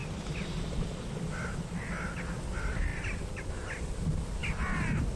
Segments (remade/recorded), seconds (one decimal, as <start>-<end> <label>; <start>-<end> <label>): 0.0-1.0 remade; 1.0-2.9 recorded; 2.9-4.0 remade; 4.0-5.2 recorded